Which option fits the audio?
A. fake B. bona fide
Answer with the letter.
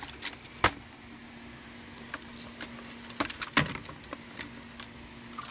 B